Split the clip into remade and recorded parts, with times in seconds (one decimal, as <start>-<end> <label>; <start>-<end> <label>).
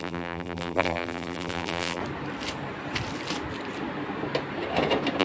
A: 0.0-2.0 remade; 2.0-5.2 recorded